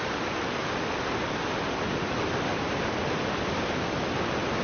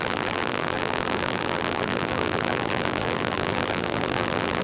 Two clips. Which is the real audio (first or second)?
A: first